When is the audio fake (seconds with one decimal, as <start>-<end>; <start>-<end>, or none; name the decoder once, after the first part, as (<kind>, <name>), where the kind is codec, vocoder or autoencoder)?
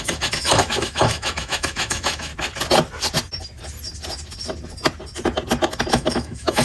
0.0-2.3 (autoencoder, DAC-VAE); 5.9-6.6